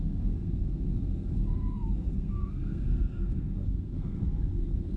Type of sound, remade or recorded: remade